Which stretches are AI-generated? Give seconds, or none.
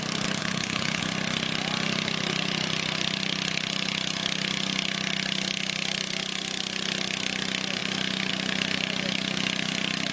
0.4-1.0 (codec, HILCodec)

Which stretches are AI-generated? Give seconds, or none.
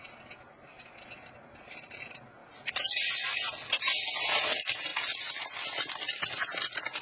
none